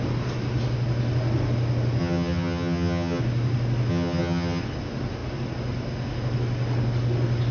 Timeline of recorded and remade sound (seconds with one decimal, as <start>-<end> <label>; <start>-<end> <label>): 0.0-2.0 recorded; 2.0-3.2 remade; 3.2-3.9 recorded; 3.9-4.6 remade; 4.6-7.5 recorded